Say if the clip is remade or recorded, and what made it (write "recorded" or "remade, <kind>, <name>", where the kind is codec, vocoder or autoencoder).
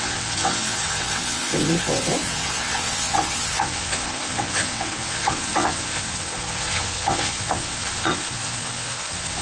remade, vocoder, WaveNeXt